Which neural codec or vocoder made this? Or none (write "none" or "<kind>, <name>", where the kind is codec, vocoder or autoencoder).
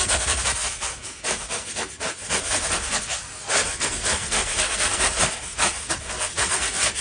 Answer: codec, SNAC